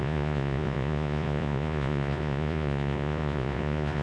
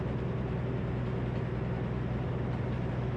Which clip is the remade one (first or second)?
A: first